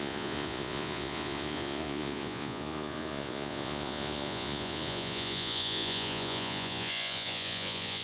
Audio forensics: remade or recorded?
remade